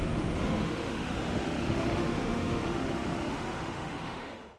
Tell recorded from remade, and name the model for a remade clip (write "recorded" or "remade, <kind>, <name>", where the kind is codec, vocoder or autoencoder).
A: remade, autoencoder, DAC-VAE